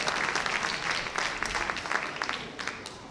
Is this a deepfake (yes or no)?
no